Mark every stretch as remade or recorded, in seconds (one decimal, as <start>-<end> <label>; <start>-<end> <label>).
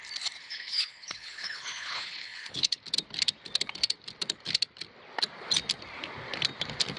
0.0-0.4 recorded; 0.4-2.8 remade; 2.8-7.0 recorded